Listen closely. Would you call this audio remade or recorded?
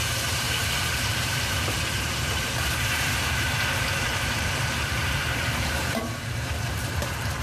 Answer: remade